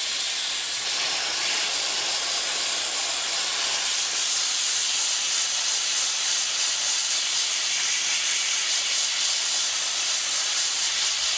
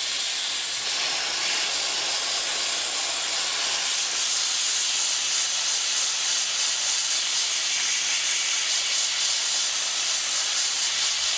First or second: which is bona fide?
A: second